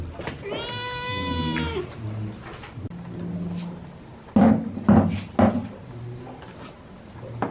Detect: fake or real real